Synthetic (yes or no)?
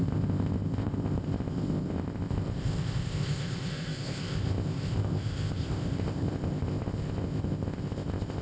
yes